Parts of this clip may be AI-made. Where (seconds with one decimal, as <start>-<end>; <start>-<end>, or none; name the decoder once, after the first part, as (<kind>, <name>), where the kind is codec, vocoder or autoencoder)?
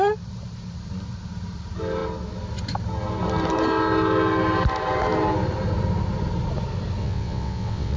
7.0-8.0 (vocoder, WaveNeXt)